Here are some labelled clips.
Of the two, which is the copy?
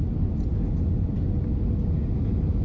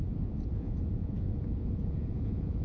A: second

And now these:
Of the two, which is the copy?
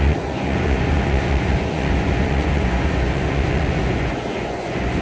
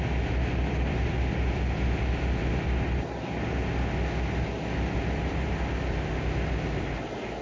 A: first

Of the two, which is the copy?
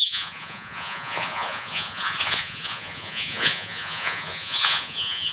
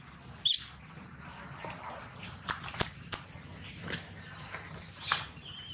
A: first